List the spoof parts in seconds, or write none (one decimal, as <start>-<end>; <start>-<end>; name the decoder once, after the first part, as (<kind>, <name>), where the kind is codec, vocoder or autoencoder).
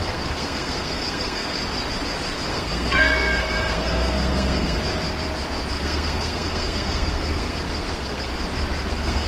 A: 0.0-1.6 (codec, SNAC); 2.5-4.8; 5.7-8.3; 8.9-9.3